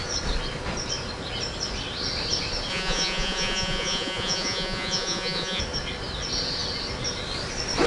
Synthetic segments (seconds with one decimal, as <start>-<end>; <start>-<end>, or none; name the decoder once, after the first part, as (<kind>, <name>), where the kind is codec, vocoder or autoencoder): 2.7-5.6 (vocoder, Vocos)